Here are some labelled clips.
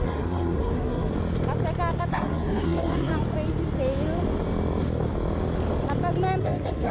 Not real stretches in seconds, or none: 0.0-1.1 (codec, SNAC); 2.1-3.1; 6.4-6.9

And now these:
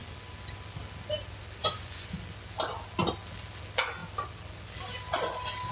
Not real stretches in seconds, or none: 1.6-2.2 (vocoder, Vocos)

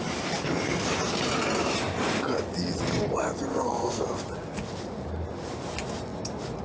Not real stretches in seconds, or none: 3.5-4.0 (codec, SNAC)

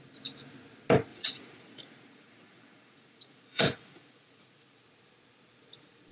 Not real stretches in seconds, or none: 1.1-4.8 (vocoder, Vocos)

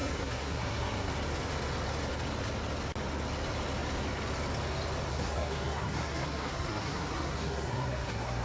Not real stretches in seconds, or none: 0.0-1.1 (codec, SNAC); 5.1-8.4

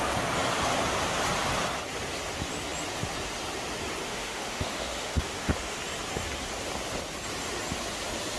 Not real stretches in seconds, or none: 4.0-5.8 (autoencoder, DAC-VAE)